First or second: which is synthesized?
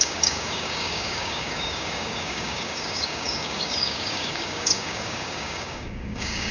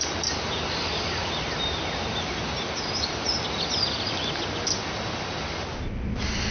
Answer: first